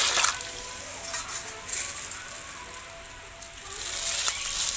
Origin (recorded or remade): recorded